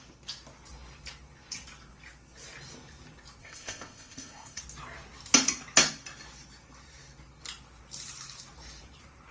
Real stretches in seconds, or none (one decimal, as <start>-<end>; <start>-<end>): 0.0-3.4; 4.6-9.3

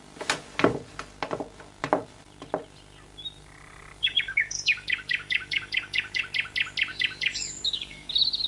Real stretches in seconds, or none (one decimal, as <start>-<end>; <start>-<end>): 0.0-4.0; 6.2-6.9; 8.1-8.5

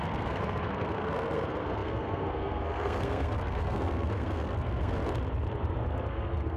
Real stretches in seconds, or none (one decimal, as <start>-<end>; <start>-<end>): 5.0-5.9

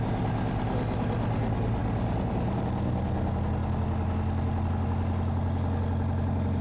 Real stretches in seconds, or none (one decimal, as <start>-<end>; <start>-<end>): 0.0-6.6

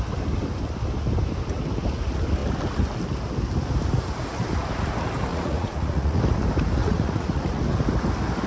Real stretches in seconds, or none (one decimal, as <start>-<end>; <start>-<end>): 0.0-5.3; 6.2-6.8; 7.6-8.5

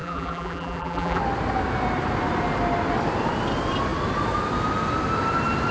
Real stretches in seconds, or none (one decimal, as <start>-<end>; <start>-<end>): 1.2-5.7